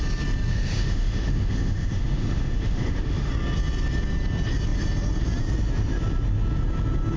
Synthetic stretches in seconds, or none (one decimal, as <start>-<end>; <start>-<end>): 0.5-3.3